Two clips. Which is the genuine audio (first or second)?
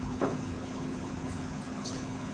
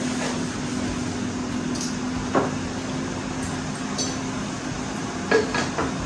second